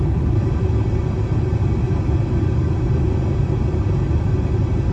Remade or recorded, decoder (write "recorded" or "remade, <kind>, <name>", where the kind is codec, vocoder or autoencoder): recorded